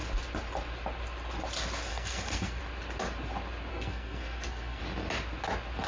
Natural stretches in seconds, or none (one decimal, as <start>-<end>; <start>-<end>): 0.0-1.9; 2.6-3.7; 4.8-5.9

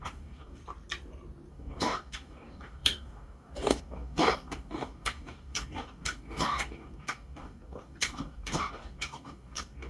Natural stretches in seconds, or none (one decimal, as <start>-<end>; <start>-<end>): 0.6-1.5

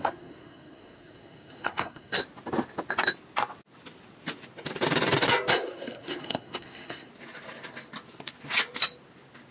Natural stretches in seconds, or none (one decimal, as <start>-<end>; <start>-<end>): 2.2-5.5; 7.1-9.5

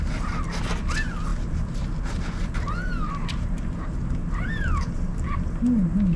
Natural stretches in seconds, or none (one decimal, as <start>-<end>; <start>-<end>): 0.0-6.2